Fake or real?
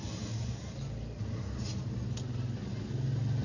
real